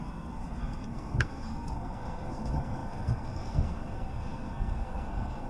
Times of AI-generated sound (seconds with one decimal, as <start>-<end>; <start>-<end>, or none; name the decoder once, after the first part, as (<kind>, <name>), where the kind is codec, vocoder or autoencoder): 0.0-5.5 (codec, SNAC)